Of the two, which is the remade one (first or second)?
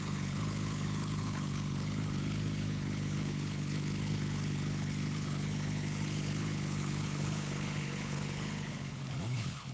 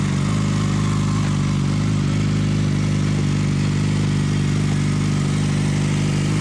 first